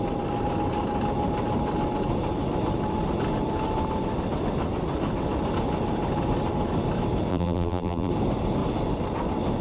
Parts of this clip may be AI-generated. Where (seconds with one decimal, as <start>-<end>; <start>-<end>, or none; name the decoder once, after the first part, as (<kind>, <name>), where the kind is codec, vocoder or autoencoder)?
7.3-8.1 (vocoder, BigVGAN v2)